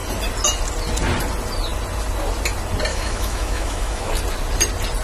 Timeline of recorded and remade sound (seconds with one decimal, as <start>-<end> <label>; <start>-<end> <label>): 0.0-2.9 recorded; 2.9-4.1 remade; 4.1-5.0 recorded